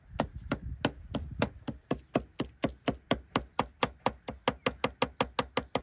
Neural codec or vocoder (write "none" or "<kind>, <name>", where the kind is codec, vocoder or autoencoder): none